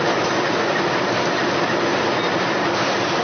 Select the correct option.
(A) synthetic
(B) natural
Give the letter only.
B